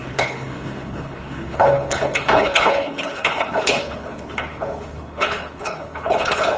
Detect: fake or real fake